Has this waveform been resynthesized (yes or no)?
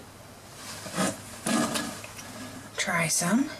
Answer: no